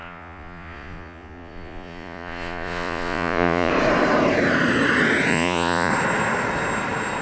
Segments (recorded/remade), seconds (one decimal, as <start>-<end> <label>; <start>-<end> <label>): 0.0-3.7 remade; 3.7-5.3 recorded; 5.3-5.9 remade; 5.9-7.2 recorded